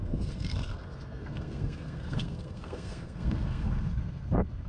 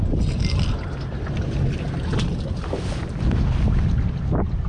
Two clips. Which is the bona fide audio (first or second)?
second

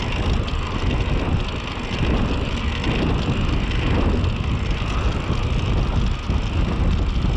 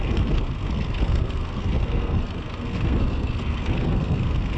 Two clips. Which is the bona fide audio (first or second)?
first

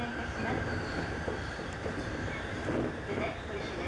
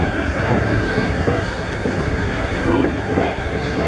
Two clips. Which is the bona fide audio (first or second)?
first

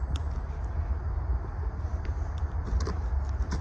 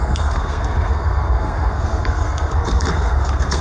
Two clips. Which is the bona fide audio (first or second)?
first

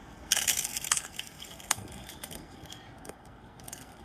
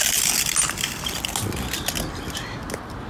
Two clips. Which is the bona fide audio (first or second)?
second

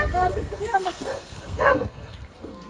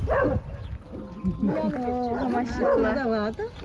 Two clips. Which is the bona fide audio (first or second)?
second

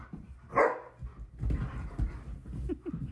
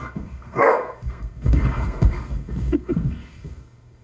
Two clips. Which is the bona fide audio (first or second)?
first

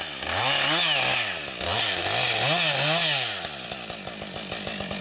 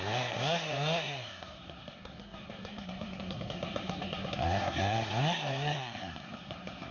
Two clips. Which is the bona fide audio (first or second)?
first